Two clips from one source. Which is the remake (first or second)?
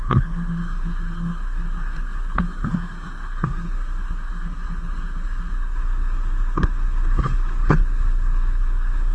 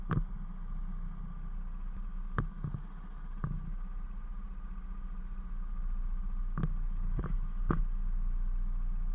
first